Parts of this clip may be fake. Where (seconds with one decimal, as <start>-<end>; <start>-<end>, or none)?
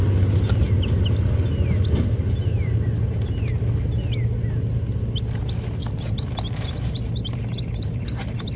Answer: 2.5-3.4; 5.8-8.2